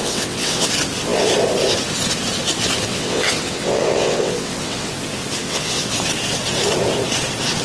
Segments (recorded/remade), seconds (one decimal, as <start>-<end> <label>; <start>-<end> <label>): 0.0-0.7 remade; 0.7-2.9 recorded; 2.9-4.9 remade; 4.9-5.4 recorded; 5.4-5.9 remade; 5.9-7.6 recorded